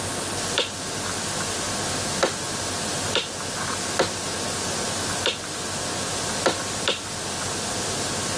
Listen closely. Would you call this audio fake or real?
real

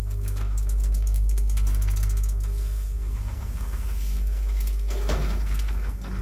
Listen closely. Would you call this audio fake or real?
fake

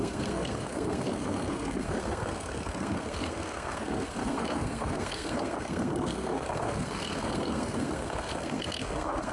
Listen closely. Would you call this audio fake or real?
fake